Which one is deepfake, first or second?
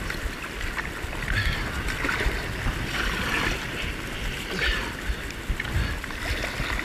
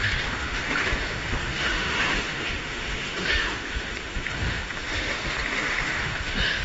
second